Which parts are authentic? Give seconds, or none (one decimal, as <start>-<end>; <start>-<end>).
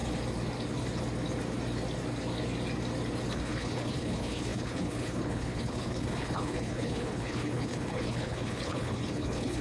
0.0-3.3